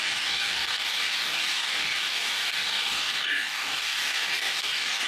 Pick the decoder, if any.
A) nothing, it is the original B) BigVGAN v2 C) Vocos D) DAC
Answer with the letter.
D